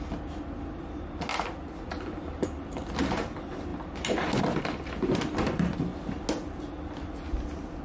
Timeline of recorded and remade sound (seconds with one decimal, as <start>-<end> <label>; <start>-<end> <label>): 0.0-7.8 recorded